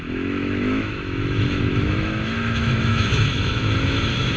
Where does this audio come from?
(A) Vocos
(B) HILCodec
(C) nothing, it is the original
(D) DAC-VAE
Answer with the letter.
D